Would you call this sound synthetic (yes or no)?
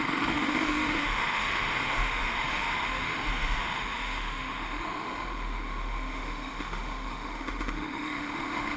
yes